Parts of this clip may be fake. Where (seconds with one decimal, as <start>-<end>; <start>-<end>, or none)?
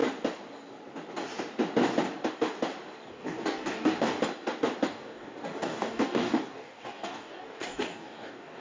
3.1-4.2; 4.9-8.6